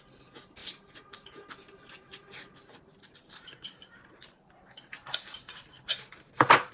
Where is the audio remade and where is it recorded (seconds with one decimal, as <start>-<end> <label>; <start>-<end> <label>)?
0.0-0.6 recorded; 0.6-4.6 remade; 4.6-6.7 recorded